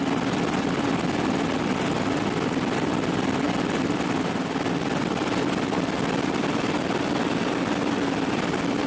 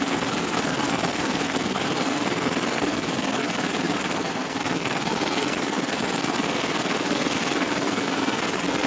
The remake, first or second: second